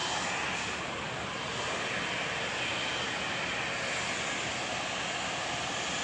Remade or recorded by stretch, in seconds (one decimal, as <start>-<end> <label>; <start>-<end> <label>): 0.0-6.0 recorded